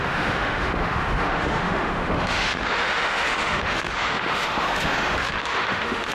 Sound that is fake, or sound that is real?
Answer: fake